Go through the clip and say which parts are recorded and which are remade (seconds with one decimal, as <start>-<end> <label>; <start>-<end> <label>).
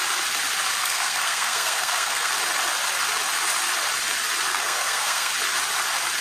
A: 0.0-0.8 recorded; 0.8-2.3 remade; 2.3-4.5 recorded; 4.5-5.3 remade; 5.3-6.2 recorded